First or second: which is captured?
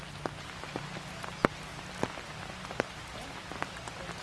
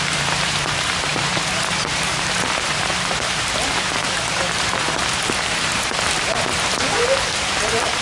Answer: first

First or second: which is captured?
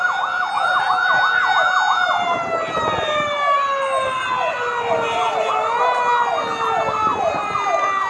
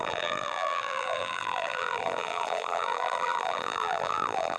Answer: first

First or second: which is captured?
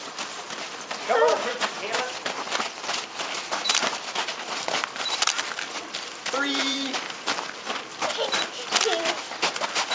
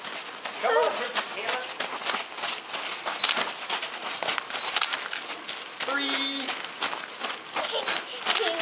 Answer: second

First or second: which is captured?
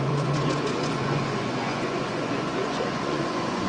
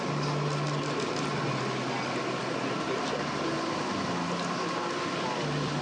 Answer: second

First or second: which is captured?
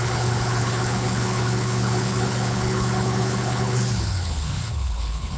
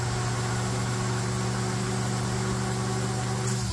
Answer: second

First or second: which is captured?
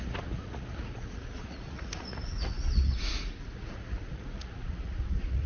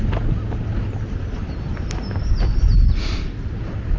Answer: second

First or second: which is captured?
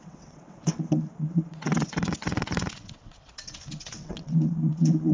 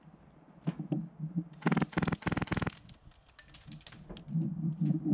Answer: second